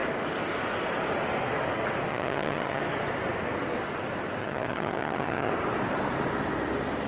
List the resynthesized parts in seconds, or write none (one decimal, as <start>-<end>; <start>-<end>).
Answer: 2.1-2.8; 4.4-5.5